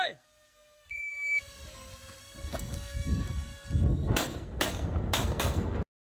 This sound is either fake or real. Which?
fake